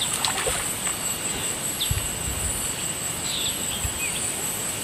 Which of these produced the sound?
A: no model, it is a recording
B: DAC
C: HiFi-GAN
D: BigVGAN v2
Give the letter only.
A